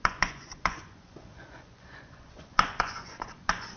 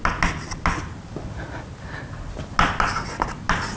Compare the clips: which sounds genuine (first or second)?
second